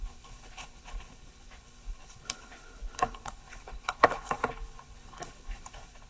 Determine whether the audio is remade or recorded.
remade